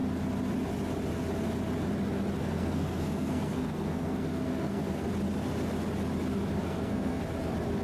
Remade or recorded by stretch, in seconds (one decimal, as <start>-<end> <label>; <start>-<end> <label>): 0.0-2.4 recorded; 2.4-5.1 remade; 5.1-6.6 recorded; 6.6-7.2 remade; 7.2-7.8 recorded